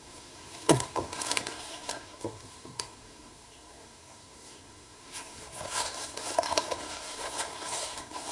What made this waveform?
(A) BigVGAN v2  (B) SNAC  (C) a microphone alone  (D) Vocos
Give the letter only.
B